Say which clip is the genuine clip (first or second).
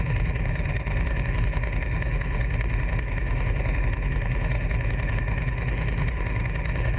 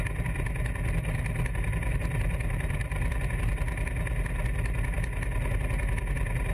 second